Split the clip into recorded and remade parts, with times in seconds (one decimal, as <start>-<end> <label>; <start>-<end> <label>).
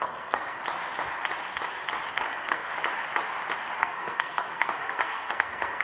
0.0-0.6 remade; 0.6-2.1 recorded; 2.1-2.7 remade; 2.7-3.8 recorded; 3.8-5.8 remade